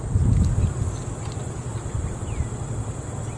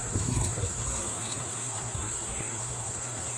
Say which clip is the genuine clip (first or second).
first